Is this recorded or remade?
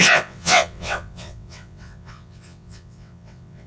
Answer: remade